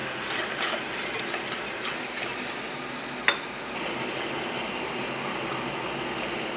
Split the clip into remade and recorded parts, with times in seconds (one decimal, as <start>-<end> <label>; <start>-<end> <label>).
0.0-6.6 recorded